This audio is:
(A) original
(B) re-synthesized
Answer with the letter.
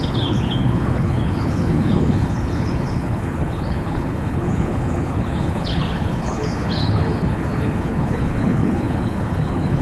B